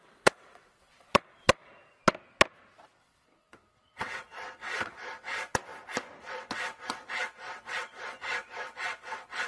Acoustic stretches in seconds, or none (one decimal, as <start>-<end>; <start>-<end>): 1.7-3.0; 5.6-6.2